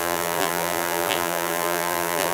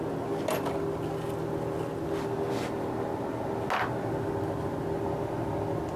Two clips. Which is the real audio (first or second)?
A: second